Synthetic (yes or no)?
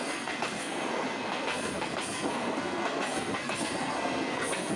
yes